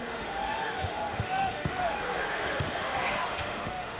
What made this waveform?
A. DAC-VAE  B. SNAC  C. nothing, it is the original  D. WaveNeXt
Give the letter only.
A